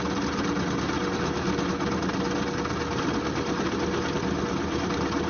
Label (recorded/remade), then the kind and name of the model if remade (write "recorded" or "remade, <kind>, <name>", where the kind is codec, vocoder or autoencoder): recorded